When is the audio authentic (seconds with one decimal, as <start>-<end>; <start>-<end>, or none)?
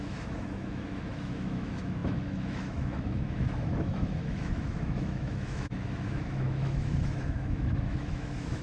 none